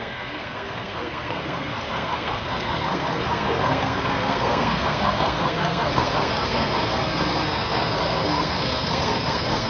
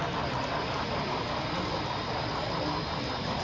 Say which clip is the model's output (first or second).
first